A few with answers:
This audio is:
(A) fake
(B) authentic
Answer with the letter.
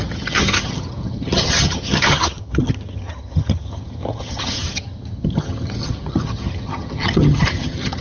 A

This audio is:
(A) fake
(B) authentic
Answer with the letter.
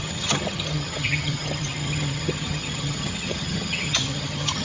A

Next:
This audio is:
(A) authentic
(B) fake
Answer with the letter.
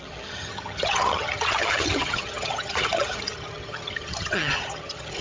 B